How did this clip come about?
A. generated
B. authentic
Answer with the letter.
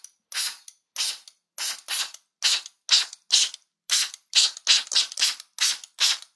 B